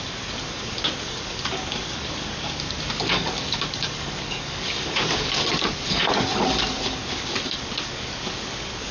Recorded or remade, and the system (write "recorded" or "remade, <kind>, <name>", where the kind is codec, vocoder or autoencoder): remade, codec, DAC